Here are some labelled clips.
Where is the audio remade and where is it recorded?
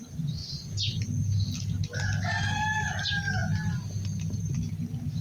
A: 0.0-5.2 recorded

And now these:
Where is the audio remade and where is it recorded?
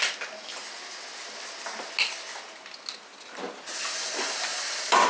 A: 0.0-5.1 recorded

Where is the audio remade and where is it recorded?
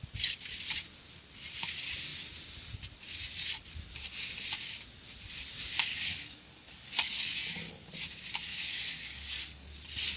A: 0.0-5.9 recorded; 5.9-7.9 remade; 7.9-8.5 recorded; 8.5-9.7 remade; 9.7-10.2 recorded